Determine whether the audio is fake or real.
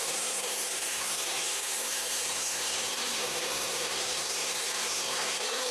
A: fake